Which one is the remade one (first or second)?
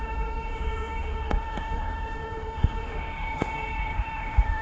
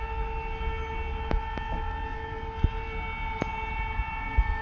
first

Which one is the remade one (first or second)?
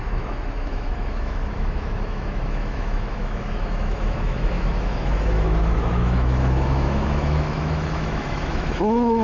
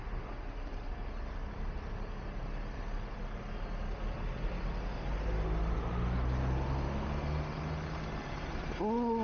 first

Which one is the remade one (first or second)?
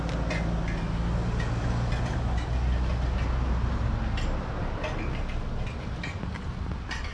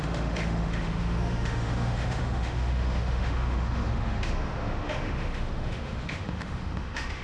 second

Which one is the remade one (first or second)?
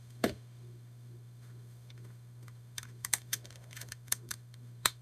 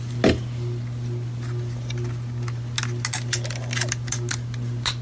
first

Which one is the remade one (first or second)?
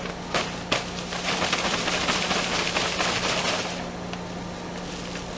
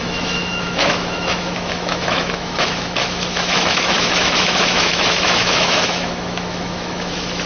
second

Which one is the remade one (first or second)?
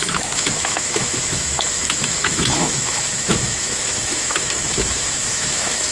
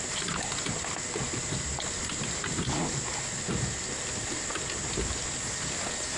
first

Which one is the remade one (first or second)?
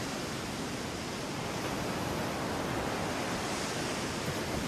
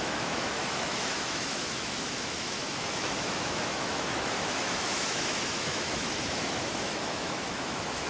second